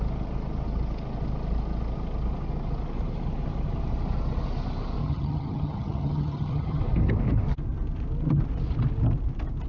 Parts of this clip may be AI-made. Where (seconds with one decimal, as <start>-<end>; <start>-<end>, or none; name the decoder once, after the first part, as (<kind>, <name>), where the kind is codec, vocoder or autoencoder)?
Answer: 5.0-6.8 (vocoder, HiFi-GAN)